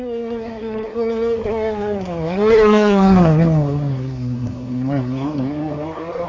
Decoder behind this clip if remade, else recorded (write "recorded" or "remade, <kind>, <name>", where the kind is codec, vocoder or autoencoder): remade, codec, SNAC